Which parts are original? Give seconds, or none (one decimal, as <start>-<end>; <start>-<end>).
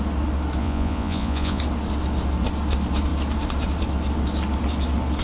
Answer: 0.0-0.6; 1.6-5.2